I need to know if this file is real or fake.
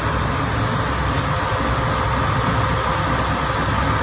real